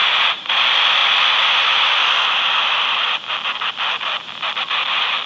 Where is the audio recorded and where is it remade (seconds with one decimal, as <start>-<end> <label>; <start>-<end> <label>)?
0.0-0.5 remade; 0.5-5.3 recorded